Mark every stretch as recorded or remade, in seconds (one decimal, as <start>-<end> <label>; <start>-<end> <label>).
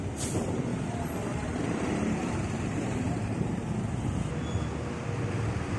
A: 0.0-0.7 recorded; 0.7-3.7 remade; 3.7-5.8 recorded